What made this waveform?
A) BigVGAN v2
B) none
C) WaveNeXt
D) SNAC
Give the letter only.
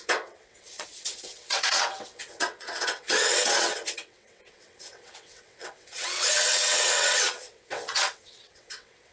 C